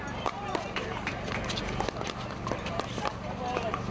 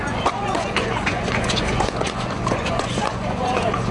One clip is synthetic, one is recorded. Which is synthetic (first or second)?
second